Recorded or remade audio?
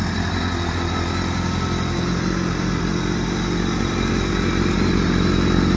recorded